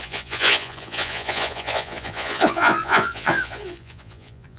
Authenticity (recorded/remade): remade